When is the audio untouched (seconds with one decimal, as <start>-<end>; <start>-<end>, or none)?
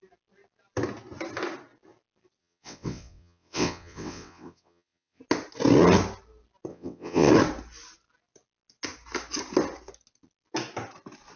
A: 0.0-2.4; 5.2-6.7; 7.3-11.4